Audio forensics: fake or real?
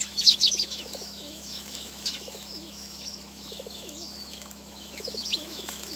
fake